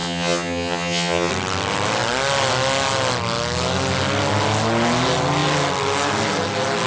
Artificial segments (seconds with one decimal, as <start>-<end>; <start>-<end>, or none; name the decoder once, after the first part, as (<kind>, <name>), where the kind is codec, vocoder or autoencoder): 0.0-1.3 (vocoder, HiFi-GAN)